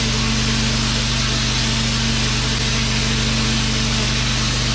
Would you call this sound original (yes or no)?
yes